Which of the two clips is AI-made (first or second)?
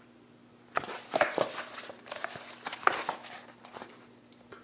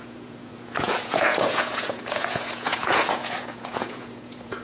second